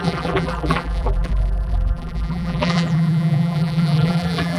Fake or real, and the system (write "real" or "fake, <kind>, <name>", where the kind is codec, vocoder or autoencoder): fake, vocoder, BigVGAN v2